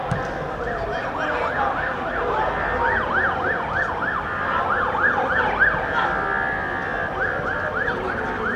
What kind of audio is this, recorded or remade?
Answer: recorded